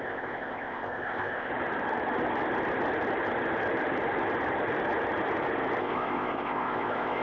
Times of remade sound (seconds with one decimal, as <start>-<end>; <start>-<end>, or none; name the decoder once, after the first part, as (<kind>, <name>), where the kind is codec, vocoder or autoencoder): 0.0-1.5 (codec, ZipCodec); 5.8-7.2